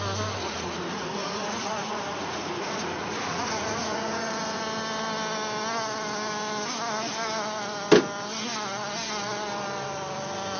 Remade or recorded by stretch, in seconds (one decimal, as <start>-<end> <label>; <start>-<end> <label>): 0.0-0.4 recorded; 0.4-4.6 remade; 4.6-10.6 recorded